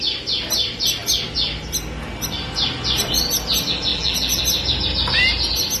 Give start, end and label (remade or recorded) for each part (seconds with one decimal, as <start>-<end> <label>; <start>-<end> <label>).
0.0-3.9 recorded; 3.9-4.4 remade; 4.4-5.8 recorded